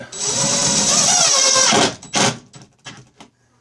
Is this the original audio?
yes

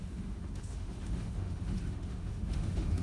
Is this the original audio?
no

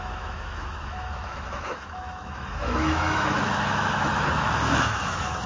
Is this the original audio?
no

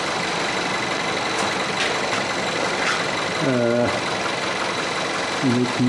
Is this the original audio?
yes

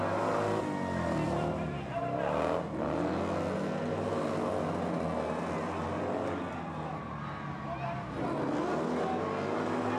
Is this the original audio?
yes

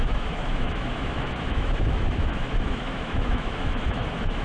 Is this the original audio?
no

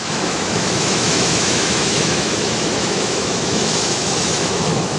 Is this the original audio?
no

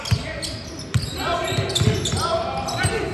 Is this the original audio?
yes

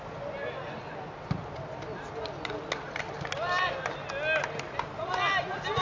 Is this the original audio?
yes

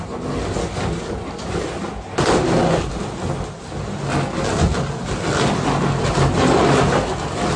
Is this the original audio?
yes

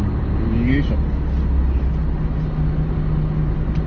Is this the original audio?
yes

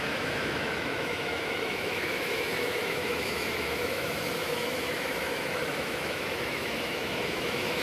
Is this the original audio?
no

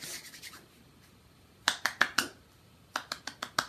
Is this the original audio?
yes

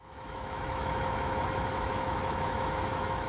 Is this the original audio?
no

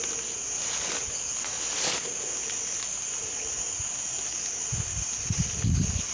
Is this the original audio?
yes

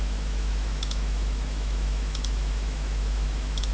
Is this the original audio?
no